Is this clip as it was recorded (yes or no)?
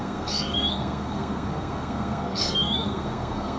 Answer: no